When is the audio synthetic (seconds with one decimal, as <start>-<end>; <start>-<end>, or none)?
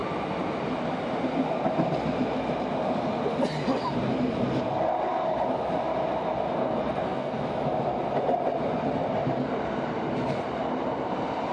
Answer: 6.6-7.4